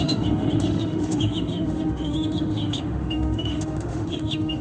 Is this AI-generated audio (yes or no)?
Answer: yes